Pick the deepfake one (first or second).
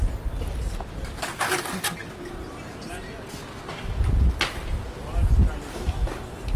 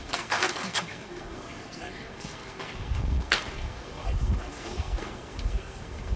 second